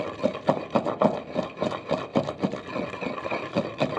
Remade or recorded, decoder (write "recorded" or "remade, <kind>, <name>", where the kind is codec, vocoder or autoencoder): recorded